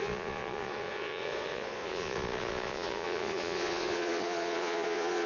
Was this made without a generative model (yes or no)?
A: no